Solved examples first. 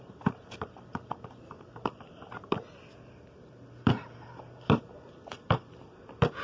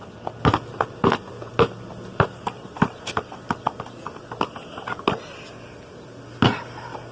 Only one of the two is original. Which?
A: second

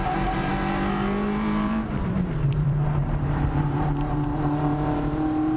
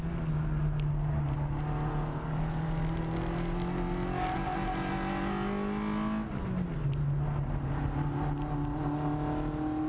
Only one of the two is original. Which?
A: second